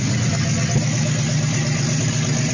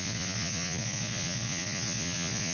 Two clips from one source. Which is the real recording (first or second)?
first